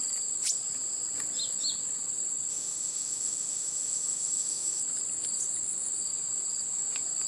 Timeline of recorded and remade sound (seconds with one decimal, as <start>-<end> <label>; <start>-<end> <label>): 0.0-2.5 recorded; 2.5-4.8 remade; 4.8-7.3 recorded